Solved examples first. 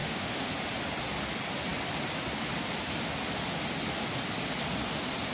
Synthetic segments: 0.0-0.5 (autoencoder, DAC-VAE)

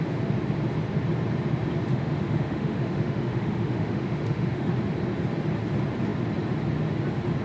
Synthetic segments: 1.9-4.7 (autoencoder, DAC-VAE)

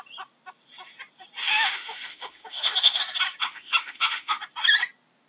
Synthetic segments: 1.4-3.0 (autoencoder, DAC-VAE); 3.4-4.4

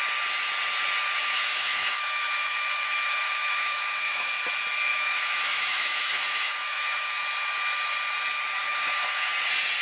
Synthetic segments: 1.2-4.3 (autoencoder, DAC-VAE); 4.9-7.2; 8.6-9.3

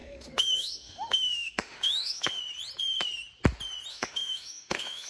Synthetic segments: 0.0-2.4 (autoencoder, DAC-VAE); 3.9-5.1